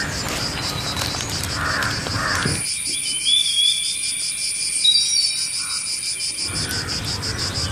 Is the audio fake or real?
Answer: real